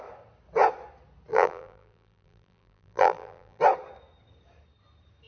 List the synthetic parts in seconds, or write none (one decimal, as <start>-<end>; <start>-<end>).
1.3-3.6